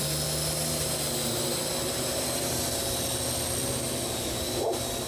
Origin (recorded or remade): recorded